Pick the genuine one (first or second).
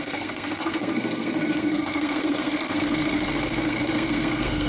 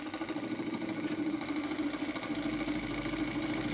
second